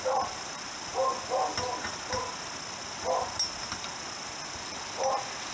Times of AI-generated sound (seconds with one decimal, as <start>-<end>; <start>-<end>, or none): none